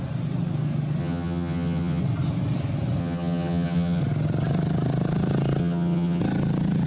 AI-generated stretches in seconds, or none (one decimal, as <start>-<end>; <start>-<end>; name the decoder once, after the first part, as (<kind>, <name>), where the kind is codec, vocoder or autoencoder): 1.0-2.0 (vocoder, HiFi-GAN); 3.0-4.0; 5.6-6.2